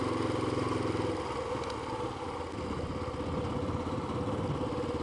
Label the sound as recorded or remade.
recorded